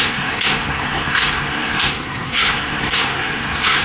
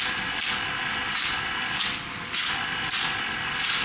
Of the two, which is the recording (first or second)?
second